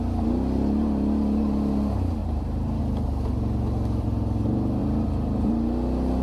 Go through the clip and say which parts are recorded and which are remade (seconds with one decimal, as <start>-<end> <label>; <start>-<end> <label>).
0.0-2.2 recorded; 2.2-2.8 remade; 2.8-4.8 recorded; 4.8-5.5 remade; 5.5-6.2 recorded